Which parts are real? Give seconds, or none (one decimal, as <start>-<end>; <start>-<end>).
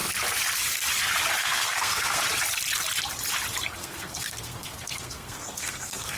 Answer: 0.0-1.4; 2.2-3.8